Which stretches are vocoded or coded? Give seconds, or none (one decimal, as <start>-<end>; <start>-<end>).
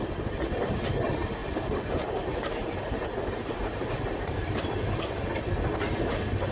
1.4-5.3